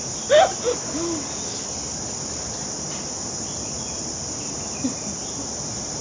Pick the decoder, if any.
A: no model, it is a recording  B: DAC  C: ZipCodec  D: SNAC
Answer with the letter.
A